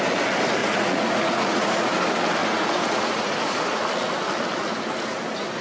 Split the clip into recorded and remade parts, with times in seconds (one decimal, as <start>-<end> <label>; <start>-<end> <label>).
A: 0.0-0.6 recorded; 0.6-1.9 remade; 1.9-2.4 recorded; 2.4-3.8 remade; 3.8-5.6 recorded